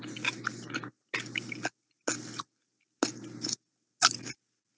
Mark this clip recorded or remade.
recorded